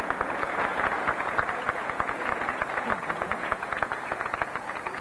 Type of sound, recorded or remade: remade